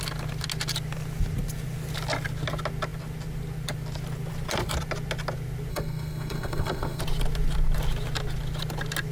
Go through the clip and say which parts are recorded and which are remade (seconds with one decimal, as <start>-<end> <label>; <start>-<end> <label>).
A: 0.0-5.7 recorded; 5.7-7.0 remade; 7.0-9.1 recorded